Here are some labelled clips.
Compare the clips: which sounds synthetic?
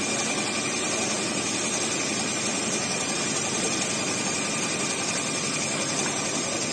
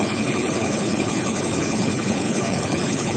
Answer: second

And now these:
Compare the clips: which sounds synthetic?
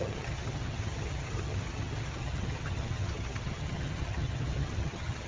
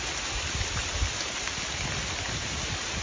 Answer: first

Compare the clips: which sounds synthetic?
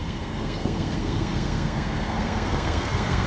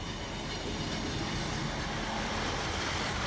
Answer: first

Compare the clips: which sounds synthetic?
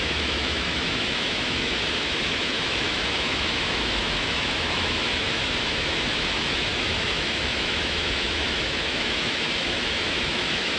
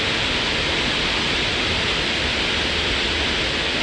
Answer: first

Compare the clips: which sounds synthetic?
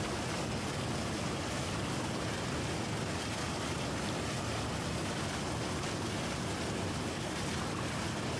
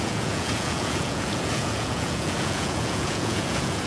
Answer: second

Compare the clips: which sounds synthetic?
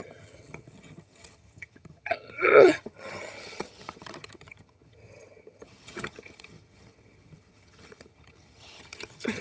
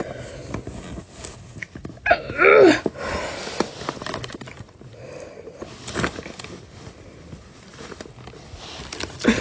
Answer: first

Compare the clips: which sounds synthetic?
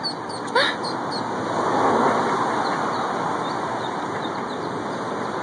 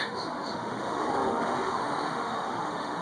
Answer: second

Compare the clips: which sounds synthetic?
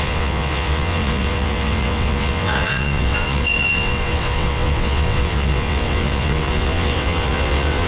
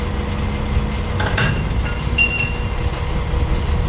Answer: first